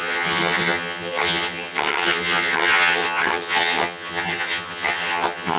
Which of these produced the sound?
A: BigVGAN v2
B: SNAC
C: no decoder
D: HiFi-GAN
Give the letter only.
D